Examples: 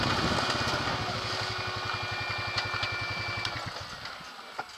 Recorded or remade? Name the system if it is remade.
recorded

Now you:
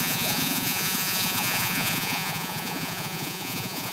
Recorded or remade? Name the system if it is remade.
remade, vocoder, Vocos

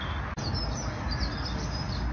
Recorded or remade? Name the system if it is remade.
recorded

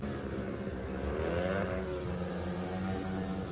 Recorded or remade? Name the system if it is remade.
recorded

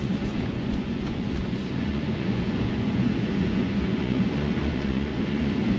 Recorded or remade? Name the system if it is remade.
remade, vocoder, Vocos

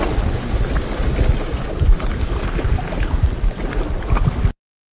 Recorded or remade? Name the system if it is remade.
recorded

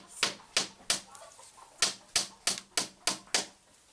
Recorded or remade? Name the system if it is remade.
recorded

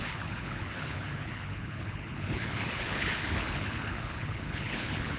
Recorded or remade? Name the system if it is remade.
remade, codec, HILCodec